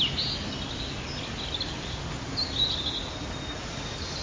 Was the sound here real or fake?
real